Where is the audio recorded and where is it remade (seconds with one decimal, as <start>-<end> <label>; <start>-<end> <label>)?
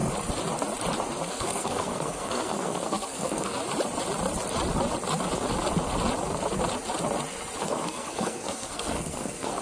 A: 0.0-1.3 recorded; 1.3-3.6 remade; 3.6-7.6 recorded; 7.6-9.6 remade